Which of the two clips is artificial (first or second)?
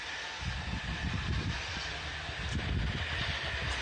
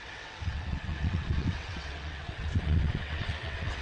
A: second